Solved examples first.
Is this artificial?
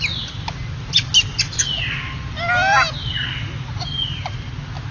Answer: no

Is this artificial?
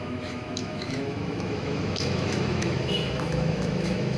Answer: yes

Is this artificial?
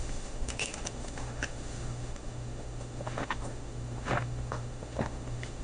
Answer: yes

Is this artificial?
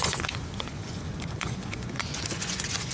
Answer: yes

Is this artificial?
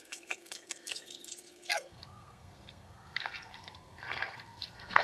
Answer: yes